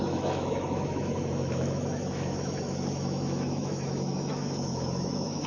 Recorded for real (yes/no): no